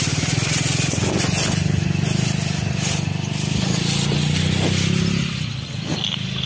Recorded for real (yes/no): yes